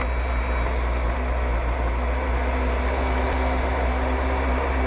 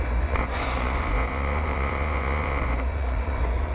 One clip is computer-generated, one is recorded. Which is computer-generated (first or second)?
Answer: second